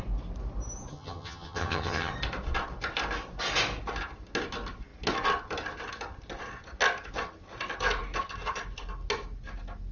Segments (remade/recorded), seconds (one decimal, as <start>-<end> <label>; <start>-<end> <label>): 0.0-0.9 recorded; 0.9-2.1 remade; 2.1-9.9 recorded